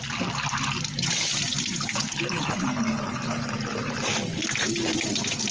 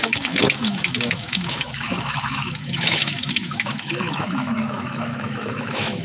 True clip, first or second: first